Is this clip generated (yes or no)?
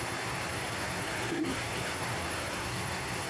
yes